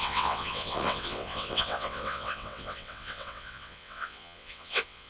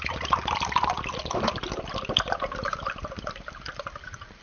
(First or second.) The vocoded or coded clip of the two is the first